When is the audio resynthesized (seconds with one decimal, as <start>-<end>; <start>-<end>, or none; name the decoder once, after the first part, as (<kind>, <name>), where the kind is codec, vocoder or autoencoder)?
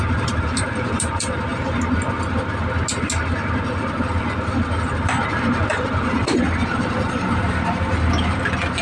0.0-1.5 (vocoder, BigVGAN v2); 4.4-8.8